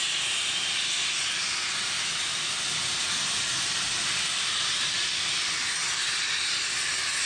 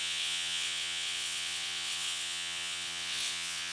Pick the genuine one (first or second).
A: first